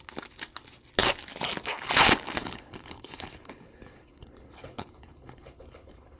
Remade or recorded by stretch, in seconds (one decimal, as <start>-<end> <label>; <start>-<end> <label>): 0.0-2.4 recorded; 2.4-6.2 remade